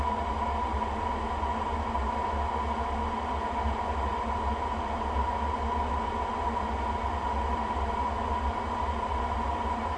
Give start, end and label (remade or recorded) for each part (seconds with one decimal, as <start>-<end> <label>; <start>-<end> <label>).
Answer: 0.0-10.0 recorded